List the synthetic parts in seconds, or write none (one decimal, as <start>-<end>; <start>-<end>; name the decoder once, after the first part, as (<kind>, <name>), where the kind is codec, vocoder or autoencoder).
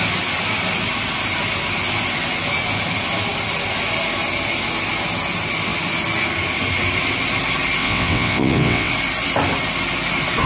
7.8-8.9 (vocoder, WaveNeXt)